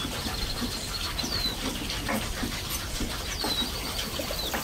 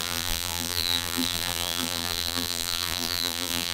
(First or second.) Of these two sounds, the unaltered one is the first